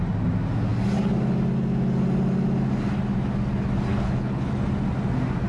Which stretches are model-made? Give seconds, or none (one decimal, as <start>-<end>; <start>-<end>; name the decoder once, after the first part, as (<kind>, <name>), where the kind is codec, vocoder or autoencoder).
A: 3.9-4.5 (codec, HILCodec)